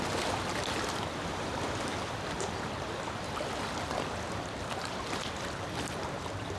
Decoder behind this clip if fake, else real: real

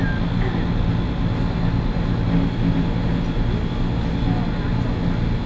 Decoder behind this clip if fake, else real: real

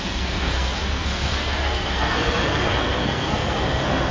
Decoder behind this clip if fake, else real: fake, codec, SNAC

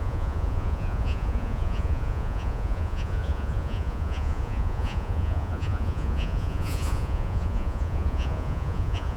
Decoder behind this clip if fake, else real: fake, vocoder, Vocos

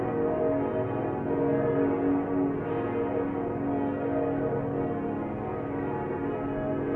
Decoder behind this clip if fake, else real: real